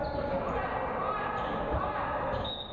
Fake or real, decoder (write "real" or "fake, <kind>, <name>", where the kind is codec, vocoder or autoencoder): real